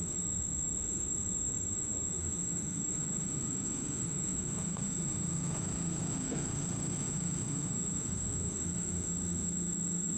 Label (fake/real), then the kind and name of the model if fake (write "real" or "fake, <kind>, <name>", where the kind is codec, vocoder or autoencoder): fake, autoencoder, DAC-VAE